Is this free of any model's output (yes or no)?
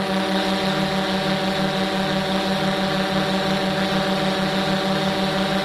yes